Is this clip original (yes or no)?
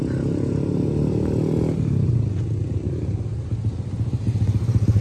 yes